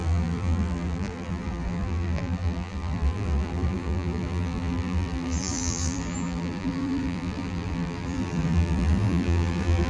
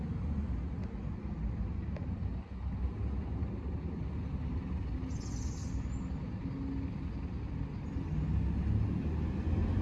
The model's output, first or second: first